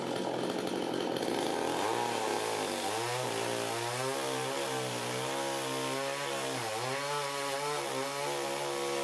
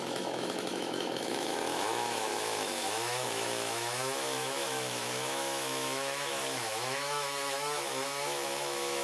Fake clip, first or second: second